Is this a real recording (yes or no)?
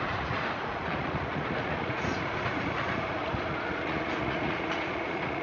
no